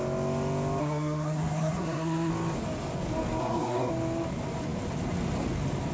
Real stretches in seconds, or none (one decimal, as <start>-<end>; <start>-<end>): 0.0-0.8; 2.3-3.4; 3.9-5.9